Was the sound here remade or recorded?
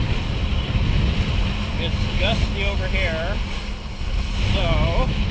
recorded